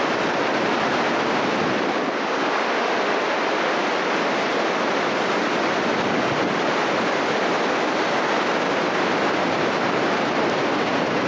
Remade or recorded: recorded